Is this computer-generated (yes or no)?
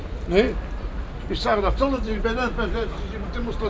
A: no